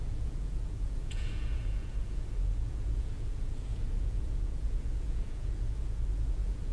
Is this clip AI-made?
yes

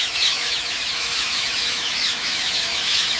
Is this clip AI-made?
yes